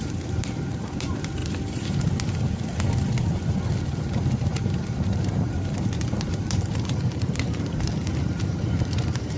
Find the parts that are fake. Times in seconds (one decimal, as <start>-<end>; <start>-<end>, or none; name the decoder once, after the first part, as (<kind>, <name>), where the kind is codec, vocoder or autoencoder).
0.0-1.4 (vocoder, BigVGAN v2); 4.0-9.4